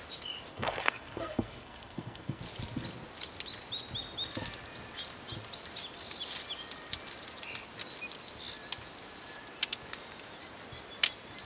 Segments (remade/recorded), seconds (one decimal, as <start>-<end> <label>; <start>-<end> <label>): 0.0-0.5 recorded; 0.5-2.4 remade; 2.4-11.5 recorded